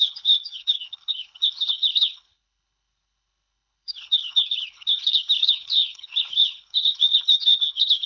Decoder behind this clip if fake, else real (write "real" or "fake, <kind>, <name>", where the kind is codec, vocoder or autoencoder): fake, codec, HILCodec